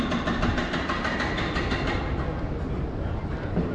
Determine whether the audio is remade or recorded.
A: recorded